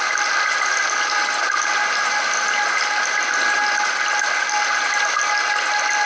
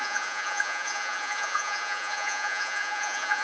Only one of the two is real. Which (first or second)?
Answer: first